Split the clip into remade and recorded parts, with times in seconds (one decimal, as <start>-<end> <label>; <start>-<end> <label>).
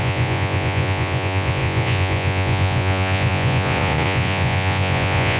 0.0-5.4 remade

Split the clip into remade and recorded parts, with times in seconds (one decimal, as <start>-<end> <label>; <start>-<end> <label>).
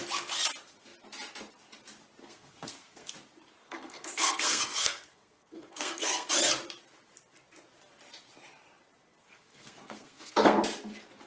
0.0-2.2 recorded; 2.2-3.1 remade; 3.1-3.6 recorded; 3.6-6.3 remade; 6.3-9.2 recorded; 9.2-10.6 remade; 10.6-11.3 recorded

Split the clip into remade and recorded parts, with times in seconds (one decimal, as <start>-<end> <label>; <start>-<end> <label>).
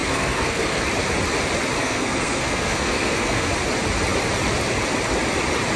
0.0-0.8 remade; 0.8-1.8 recorded; 1.8-3.5 remade; 3.5-5.8 recorded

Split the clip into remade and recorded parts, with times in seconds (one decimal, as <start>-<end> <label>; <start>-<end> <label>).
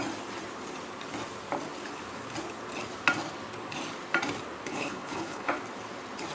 0.0-4.7 recorded; 4.7-5.6 remade; 5.6-6.3 recorded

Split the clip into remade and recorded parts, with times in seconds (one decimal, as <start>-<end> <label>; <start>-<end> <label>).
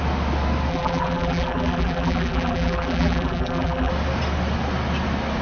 0.0-0.7 recorded; 0.7-3.9 remade; 3.9-5.4 recorded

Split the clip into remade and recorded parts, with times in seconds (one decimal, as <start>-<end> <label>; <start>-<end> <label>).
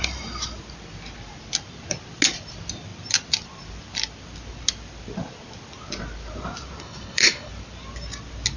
0.0-6.8 recorded; 6.8-7.5 remade; 7.5-8.6 recorded